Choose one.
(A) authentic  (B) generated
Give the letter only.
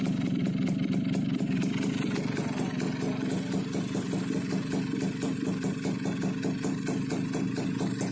A